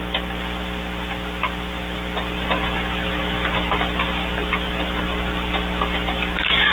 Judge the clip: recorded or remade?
recorded